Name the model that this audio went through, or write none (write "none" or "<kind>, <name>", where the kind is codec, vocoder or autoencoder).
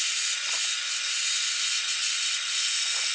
none